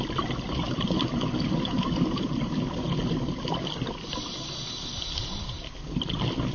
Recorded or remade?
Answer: recorded